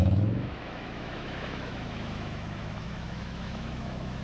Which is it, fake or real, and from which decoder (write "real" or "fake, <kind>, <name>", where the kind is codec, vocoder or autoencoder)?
fake, autoencoder, DAC-VAE